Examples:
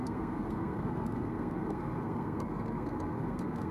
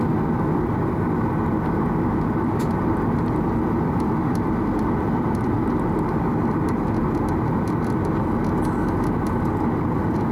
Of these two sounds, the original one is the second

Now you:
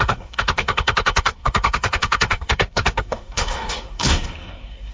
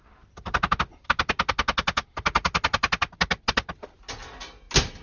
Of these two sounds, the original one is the second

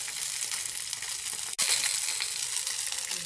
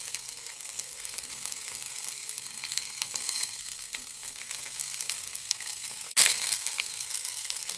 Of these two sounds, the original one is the first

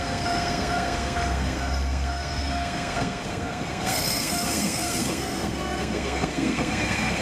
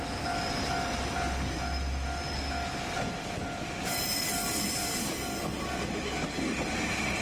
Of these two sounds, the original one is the second